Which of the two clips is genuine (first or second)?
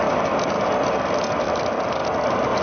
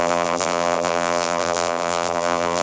first